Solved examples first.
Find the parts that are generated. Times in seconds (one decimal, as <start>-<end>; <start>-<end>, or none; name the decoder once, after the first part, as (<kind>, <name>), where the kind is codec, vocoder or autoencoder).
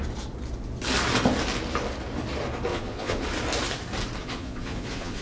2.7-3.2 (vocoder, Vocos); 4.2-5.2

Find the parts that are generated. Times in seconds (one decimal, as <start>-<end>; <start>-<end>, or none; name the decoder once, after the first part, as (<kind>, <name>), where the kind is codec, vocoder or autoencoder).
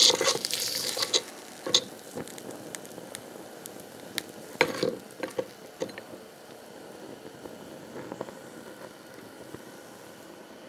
0.0-1.1 (vocoder, BigVGAN v2)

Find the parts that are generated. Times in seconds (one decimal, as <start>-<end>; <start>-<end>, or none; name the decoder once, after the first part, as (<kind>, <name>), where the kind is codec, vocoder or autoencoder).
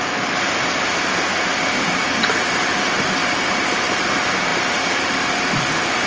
0.0-1.3 (vocoder, BigVGAN v2); 2.4-6.1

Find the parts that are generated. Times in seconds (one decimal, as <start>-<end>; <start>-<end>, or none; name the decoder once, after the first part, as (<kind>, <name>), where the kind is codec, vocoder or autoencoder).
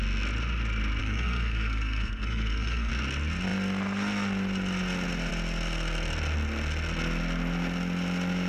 1.0-2.9 (codec, SNAC)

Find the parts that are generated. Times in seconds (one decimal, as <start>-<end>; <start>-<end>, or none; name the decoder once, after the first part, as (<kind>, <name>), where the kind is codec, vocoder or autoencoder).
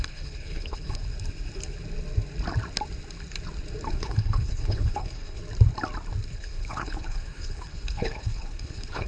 0.0-1.0 (codec, HILCodec); 3.9-5.4; 6.3-9.1